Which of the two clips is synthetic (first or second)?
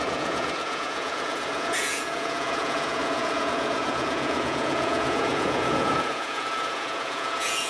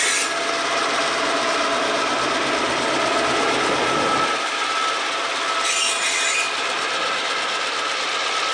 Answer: first